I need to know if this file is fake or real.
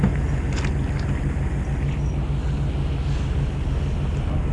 real